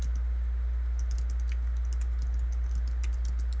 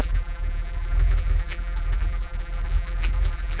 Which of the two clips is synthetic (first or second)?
second